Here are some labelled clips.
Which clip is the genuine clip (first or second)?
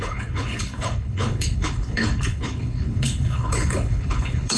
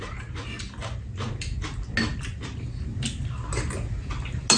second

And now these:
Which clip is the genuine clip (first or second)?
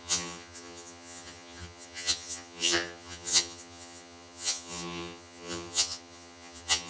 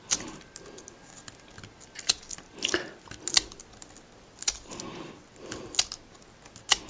second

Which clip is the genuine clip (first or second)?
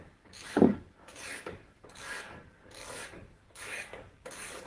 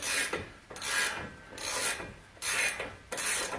second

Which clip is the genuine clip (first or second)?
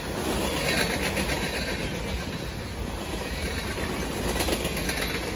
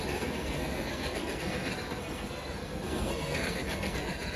first